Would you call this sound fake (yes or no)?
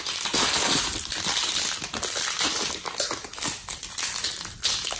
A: no